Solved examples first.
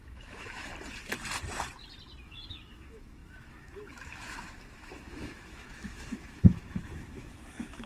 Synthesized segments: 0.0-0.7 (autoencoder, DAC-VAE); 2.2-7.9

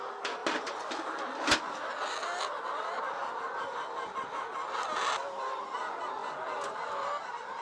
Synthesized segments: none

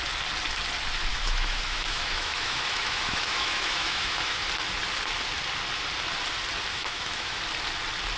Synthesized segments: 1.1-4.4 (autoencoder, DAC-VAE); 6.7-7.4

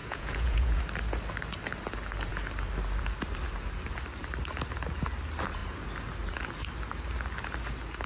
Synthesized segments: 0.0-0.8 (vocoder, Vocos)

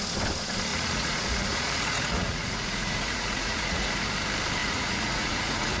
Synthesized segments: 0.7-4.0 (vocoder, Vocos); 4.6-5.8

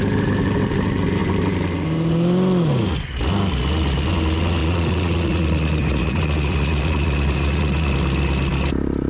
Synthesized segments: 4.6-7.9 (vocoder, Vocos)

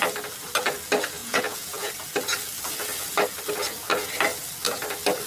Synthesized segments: 1.2-1.9 (vocoder, Vocos)

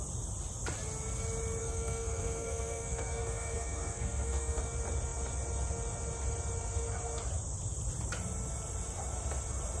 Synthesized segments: 1.6-4.6 (codec, SNAC)